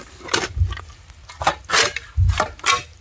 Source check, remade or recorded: recorded